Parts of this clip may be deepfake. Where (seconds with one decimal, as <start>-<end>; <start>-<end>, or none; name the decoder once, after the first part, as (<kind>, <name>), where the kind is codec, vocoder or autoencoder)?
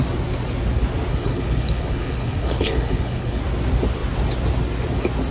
1.1-3.4 (codec, HILCodec)